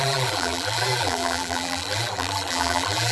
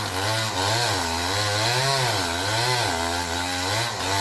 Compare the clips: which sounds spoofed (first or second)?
first